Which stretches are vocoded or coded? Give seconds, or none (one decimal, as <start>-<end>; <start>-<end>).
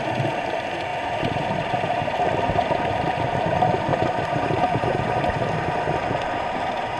3.9-5.7